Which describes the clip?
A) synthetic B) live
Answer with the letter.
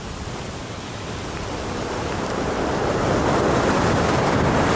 A